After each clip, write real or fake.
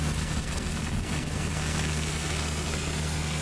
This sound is fake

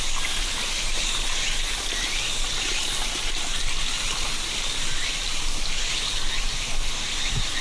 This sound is real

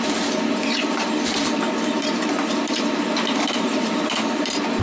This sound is fake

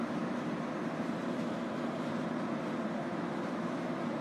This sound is real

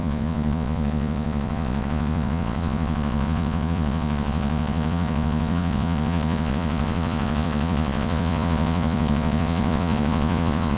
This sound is fake